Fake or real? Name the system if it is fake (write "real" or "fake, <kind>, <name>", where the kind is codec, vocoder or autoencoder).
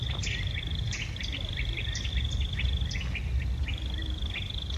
real